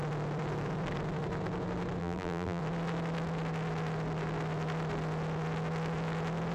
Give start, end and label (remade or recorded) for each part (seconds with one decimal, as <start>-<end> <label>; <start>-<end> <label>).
0.0-2.0 recorded; 2.0-2.6 remade; 2.6-6.5 recorded